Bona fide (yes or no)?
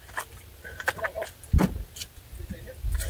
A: yes